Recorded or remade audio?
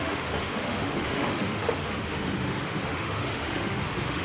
remade